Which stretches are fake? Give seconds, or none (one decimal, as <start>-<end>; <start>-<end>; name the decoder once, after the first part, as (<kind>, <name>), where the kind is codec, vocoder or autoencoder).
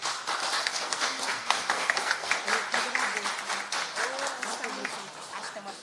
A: 0.6-2.3 (codec, SNAC)